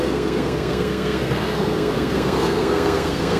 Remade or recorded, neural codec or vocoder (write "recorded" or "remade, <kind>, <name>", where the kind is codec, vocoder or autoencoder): remade, codec, SNAC